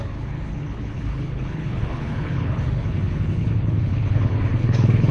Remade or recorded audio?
remade